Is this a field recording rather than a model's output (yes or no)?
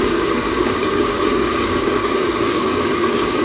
no